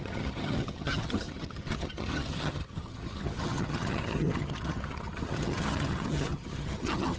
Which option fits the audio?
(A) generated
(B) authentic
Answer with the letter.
A